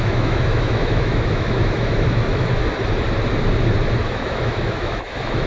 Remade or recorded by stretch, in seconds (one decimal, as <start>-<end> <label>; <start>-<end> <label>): 0.0-2.6 remade; 2.6-4.0 recorded; 4.0-5.5 remade